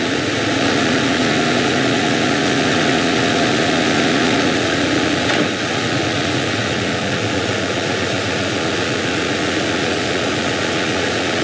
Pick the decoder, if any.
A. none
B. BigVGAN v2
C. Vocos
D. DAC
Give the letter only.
C